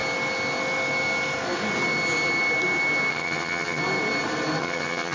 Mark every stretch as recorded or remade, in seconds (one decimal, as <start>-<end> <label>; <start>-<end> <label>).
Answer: 0.0-3.1 recorded; 3.1-3.8 remade; 3.8-4.6 recorded; 4.6-5.1 remade